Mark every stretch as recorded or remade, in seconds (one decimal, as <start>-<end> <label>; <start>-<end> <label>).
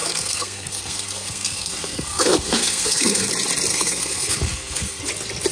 0.0-3.3 remade; 3.3-3.7 recorded; 3.7-5.0 remade; 5.0-5.5 recorded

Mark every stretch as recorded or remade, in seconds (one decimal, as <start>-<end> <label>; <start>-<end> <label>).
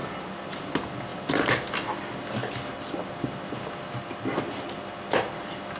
0.0-5.8 recorded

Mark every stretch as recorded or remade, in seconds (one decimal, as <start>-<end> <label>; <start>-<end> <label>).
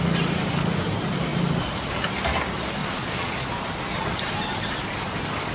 0.0-2.8 recorded; 2.8-3.3 remade; 3.3-5.5 recorded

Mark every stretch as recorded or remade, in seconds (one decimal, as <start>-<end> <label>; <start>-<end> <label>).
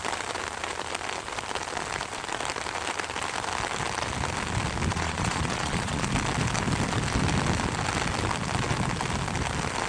0.0-4.9 recorded; 4.9-6.1 remade; 6.1-9.9 recorded